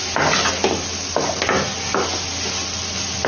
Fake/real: real